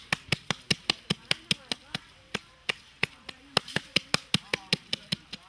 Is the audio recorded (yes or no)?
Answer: yes